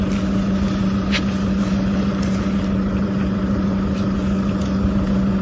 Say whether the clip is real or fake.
real